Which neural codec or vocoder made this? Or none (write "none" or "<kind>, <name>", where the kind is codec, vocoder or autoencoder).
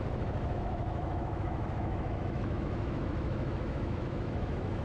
autoencoder, DAC-VAE